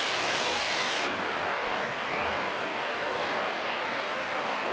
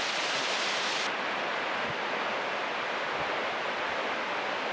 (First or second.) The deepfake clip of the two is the first